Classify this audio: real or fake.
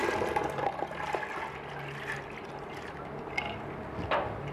real